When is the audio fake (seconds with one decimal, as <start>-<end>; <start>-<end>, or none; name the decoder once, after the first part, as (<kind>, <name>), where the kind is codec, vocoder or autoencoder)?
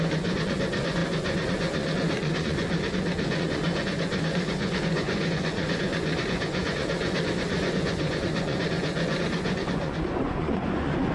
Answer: 0.0-11.1 (vocoder, Vocos)